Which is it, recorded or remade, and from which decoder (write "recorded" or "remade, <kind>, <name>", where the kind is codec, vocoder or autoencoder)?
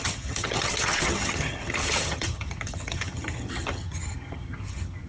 remade, vocoder, HiFi-GAN